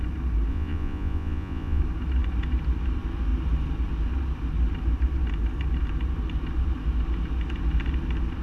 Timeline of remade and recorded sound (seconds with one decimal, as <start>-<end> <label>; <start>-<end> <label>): 0.0-0.5 recorded; 0.5-1.8 remade; 1.8-8.4 recorded